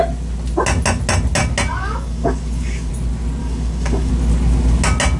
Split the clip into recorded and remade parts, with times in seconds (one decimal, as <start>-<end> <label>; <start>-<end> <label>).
0.0-1.7 recorded; 1.7-2.9 remade; 2.9-3.4 recorded; 3.4-4.1 remade; 4.1-5.2 recorded